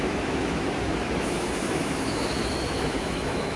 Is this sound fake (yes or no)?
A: yes